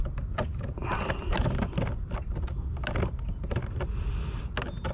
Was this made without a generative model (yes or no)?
yes